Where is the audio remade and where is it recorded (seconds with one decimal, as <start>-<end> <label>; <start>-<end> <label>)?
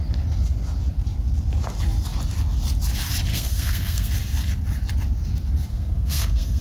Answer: 0.0-3.3 recorded; 3.3-4.1 remade; 4.1-5.7 recorded; 5.7-6.6 remade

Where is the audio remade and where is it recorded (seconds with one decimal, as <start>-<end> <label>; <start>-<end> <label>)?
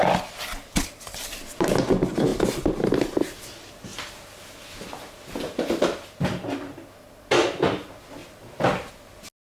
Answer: 0.0-0.6 recorded; 0.6-1.3 remade; 1.3-8.2 recorded; 8.2-8.9 remade; 8.9-9.5 recorded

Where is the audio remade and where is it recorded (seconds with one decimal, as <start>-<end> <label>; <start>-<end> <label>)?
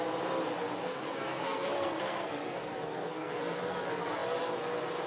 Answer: 0.0-0.9 recorded; 0.9-3.8 remade; 3.8-5.1 recorded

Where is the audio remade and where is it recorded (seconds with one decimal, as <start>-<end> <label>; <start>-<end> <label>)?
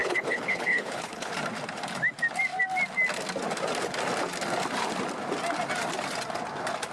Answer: 0.0-1.3 remade; 1.3-6.9 recorded